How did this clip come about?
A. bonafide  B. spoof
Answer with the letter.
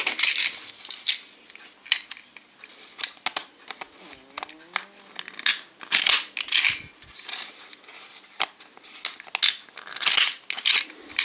A